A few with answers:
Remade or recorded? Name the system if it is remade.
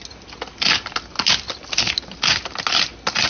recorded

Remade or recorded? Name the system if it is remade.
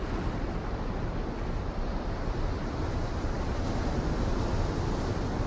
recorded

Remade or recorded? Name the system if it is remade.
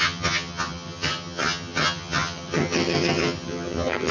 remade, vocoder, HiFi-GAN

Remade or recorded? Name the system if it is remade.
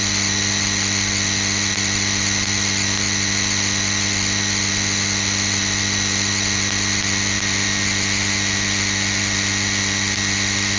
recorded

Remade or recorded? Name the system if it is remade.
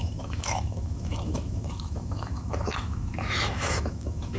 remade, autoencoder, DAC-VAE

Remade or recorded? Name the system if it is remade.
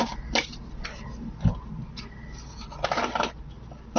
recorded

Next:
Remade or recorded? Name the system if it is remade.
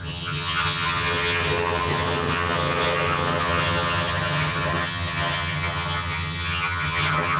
remade, vocoder, HiFi-GAN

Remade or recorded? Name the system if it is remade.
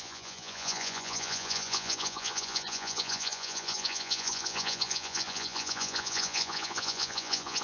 remade, vocoder, Vocos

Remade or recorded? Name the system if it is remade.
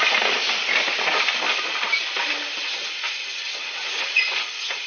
recorded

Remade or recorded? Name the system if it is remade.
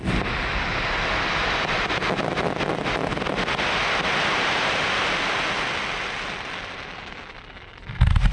recorded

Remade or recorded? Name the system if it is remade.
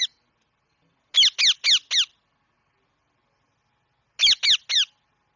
recorded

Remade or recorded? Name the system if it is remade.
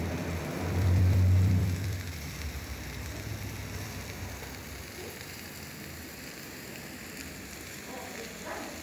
remade, vocoder, BigVGAN v2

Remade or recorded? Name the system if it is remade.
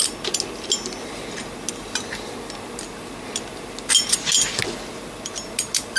recorded